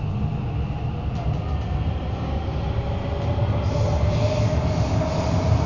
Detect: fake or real real